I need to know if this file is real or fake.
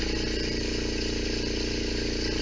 real